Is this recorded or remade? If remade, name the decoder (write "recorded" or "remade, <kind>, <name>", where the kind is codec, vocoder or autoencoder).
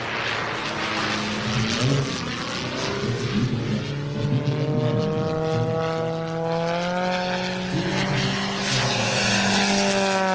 recorded